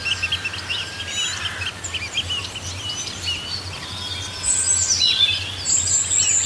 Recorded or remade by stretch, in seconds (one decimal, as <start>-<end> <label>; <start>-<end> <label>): 0.0-6.5 recorded